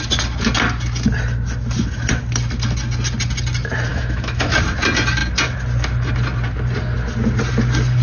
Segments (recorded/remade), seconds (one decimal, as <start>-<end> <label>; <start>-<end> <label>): 0.0-3.9 recorded; 3.9-4.5 remade; 4.5-8.0 recorded